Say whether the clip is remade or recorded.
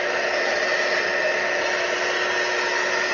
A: recorded